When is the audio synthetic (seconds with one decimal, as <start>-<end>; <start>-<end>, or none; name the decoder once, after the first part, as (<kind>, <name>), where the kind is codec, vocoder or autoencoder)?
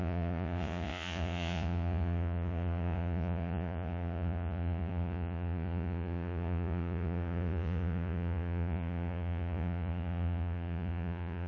0.0-11.5 (vocoder, Vocos)